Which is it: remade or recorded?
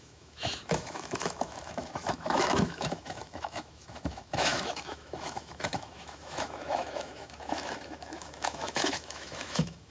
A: remade